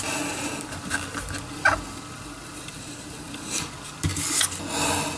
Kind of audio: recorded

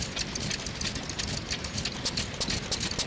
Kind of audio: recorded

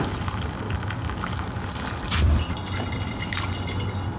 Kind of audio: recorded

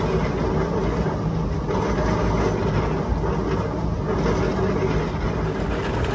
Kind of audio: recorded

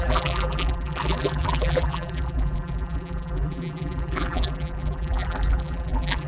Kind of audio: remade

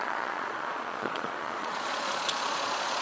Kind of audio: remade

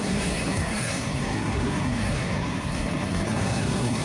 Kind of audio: remade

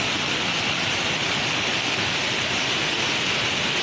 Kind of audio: recorded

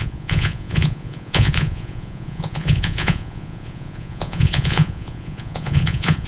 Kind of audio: remade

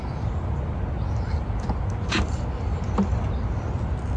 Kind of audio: recorded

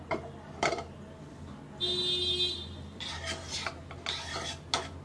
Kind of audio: recorded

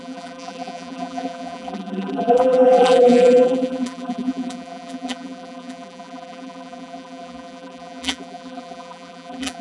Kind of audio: remade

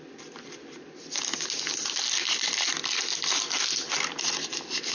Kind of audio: recorded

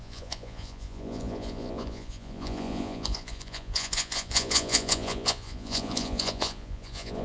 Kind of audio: remade